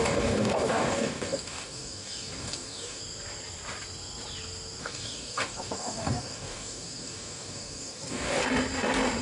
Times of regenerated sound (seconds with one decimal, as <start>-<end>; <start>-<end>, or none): 0.0-3.0; 4.8-8.4